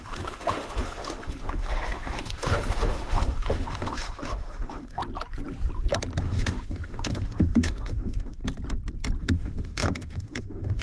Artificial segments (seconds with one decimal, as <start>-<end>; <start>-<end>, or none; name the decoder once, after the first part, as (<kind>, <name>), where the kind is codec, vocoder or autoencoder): 0.0-5.0 (autoencoder, DAC-VAE); 6.2-8.4; 9.2-10.8